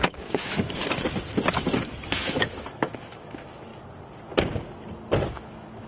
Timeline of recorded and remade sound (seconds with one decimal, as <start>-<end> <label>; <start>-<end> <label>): 0.0-0.8 remade; 0.8-1.5 recorded; 1.5-3.7 remade; 3.7-5.3 recorded; 5.3-5.9 remade